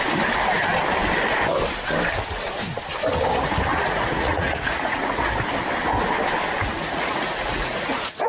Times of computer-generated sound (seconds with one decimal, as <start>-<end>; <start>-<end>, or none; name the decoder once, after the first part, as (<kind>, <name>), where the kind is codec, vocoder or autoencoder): 3.7-5.2 (vocoder, Vocos); 6.6-8.3